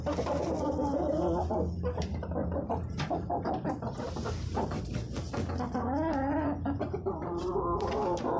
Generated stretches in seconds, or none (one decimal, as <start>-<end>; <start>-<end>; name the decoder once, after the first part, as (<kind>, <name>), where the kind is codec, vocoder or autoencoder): 2.4-4.8 (vocoder, BigVGAN v2); 7.4-7.9

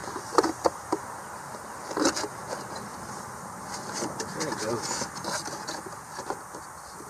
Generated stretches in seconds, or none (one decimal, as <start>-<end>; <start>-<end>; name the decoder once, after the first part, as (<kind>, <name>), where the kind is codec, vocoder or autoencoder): 0.0-1.6 (vocoder, BigVGAN v2); 2.9-4.7

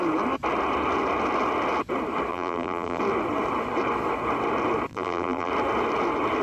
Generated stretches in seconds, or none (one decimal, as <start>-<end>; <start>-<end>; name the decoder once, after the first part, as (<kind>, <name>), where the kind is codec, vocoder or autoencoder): 2.3-3.0 (vocoder, BigVGAN v2); 4.9-5.5

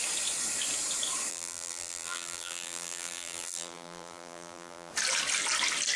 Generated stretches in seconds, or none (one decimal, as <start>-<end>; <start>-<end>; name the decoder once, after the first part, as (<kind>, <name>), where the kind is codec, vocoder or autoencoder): 1.3-4.9 (vocoder, BigVGAN v2)

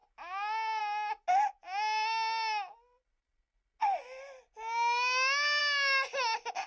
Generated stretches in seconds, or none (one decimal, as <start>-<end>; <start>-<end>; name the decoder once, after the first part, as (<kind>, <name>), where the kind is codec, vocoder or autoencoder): none